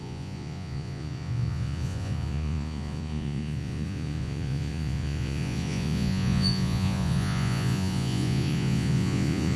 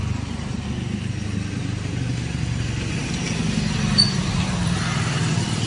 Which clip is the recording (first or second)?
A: second